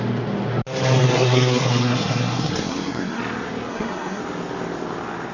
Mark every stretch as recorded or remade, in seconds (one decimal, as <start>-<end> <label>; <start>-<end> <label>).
0.0-1.0 recorded; 1.0-3.2 remade; 3.2-3.7 recorded; 3.7-4.2 remade; 4.2-5.3 recorded